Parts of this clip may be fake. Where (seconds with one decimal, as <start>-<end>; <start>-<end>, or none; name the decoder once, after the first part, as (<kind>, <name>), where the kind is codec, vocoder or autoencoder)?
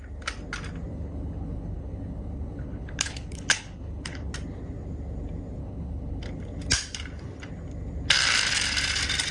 0.9-4.3 (codec, HILCodec); 5.6-6.2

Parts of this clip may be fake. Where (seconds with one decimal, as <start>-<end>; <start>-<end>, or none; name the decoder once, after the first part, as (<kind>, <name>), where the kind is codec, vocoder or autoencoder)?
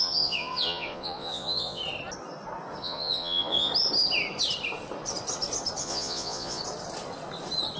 0.0-1.8 (vocoder, Vocos); 2.8-3.7; 5.8-6.6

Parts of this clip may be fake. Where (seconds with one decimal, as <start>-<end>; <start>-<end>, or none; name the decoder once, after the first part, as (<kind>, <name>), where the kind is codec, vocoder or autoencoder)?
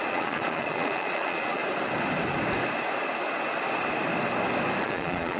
0.0-1.6 (vocoder, Vocos); 4.8-5.4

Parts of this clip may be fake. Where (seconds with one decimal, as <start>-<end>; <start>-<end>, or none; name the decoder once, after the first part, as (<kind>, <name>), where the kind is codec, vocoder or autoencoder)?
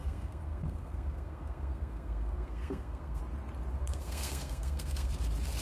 0.0-3.2 (codec, SNAC); 3.8-5.1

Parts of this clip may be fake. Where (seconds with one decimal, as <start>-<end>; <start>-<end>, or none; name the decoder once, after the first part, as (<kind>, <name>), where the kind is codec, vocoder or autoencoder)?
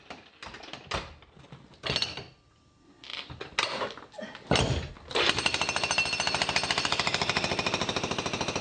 none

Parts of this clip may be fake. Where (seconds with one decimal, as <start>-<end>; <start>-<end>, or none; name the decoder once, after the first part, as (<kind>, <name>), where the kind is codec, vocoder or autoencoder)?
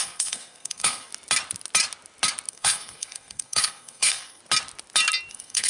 0.0-1.1 (codec, SNAC); 2.5-4.4; 5.3-5.7